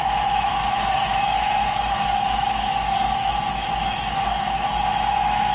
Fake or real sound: fake